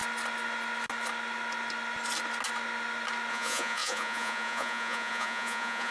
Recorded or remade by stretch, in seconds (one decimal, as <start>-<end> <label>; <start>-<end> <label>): 0.0-3.3 recorded; 3.3-5.9 remade